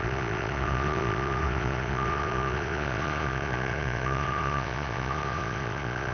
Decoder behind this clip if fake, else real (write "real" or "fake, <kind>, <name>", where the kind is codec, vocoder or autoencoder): fake, vocoder, Vocos